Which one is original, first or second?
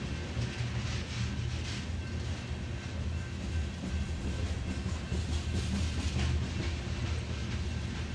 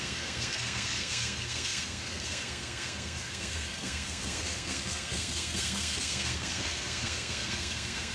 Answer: first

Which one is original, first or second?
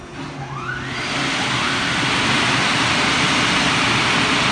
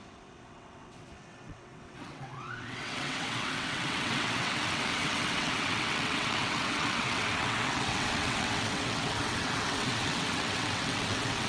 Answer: first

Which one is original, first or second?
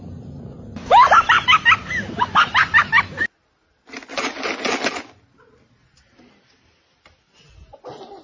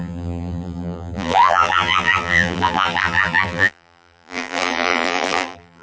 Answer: first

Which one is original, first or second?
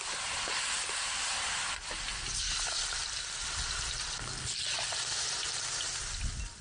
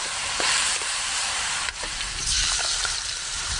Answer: first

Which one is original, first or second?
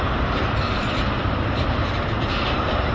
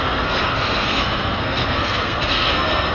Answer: first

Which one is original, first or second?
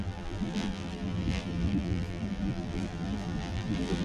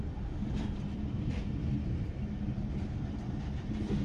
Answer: second